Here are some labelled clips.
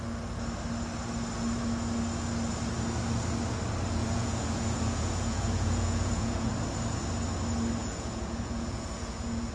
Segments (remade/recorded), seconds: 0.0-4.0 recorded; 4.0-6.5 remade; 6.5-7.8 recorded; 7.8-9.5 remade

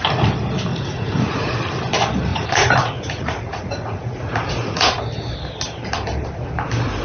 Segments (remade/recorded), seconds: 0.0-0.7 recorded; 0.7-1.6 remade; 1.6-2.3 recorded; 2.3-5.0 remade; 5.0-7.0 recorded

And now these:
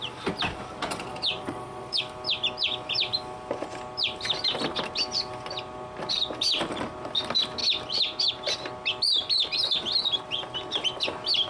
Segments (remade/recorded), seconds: 0.0-1.1 recorded; 1.1-2.0 remade; 2.0-11.5 recorded

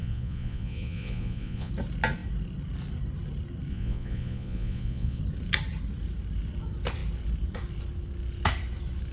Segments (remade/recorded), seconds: 0.0-1.7 remade; 1.7-3.7 recorded; 3.7-5.2 remade; 5.2-9.1 recorded

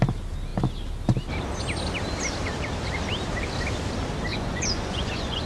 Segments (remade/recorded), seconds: 0.0-4.3 recorded; 4.3-5.5 remade

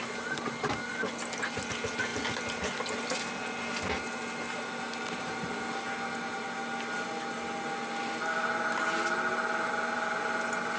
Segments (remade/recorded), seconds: 0.0-10.8 recorded

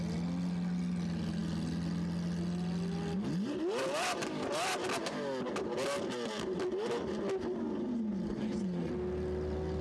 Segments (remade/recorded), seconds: 0.0-8.3 recorded; 8.3-8.9 remade; 8.9-9.8 recorded